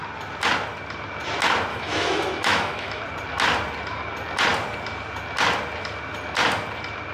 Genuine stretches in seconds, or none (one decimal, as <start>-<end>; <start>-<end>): 0.0-1.7; 3.0-7.1